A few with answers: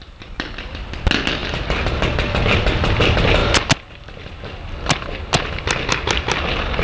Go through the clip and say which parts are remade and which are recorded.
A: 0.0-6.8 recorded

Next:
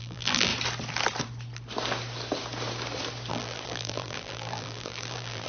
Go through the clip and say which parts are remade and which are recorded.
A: 0.0-0.5 remade; 0.5-3.3 recorded; 3.3-5.5 remade

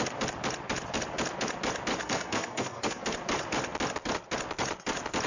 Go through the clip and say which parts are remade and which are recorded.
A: 0.0-2.0 recorded; 2.0-3.0 remade; 3.0-5.3 recorded

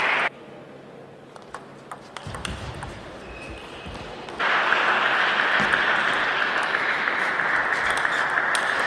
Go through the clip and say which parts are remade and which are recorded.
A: 0.0-6.4 recorded; 6.4-7.4 remade; 7.4-8.9 recorded

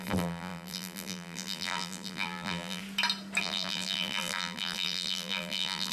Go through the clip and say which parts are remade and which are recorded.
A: 0.0-2.8 remade; 2.8-3.4 recorded; 3.4-5.9 remade

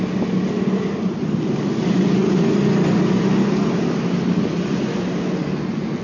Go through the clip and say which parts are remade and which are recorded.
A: 0.0-6.0 recorded

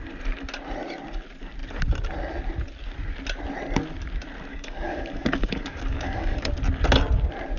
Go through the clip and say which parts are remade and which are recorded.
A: 0.0-4.5 recorded; 4.5-6.5 remade; 6.5-7.6 recorded

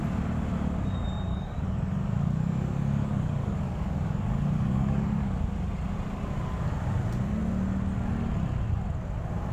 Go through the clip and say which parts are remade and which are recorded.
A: 0.0-1.3 recorded; 1.3-5.4 remade; 5.4-9.5 recorded